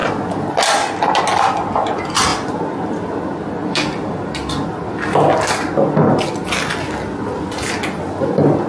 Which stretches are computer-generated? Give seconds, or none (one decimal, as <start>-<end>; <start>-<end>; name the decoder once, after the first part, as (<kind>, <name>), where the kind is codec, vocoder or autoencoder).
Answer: none